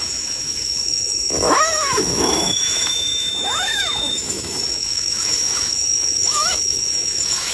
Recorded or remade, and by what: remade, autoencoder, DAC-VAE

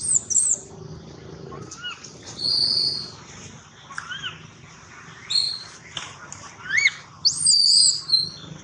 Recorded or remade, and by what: recorded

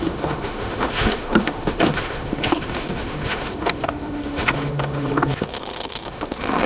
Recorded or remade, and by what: remade, autoencoder, DAC-VAE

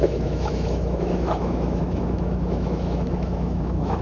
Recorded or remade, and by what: remade, autoencoder, DAC-VAE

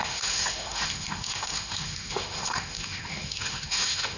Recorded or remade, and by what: remade, autoencoder, DAC-VAE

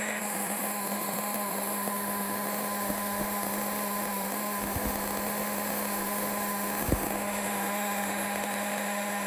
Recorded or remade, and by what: remade, autoencoder, DAC-VAE